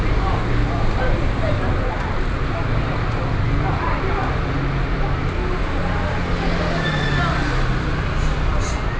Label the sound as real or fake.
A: real